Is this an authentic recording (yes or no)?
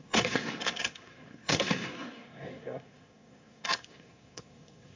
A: no